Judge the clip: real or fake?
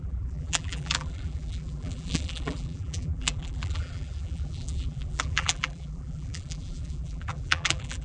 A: fake